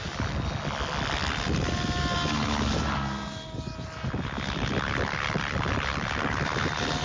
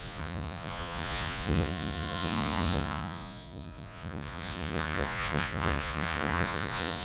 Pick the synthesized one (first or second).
second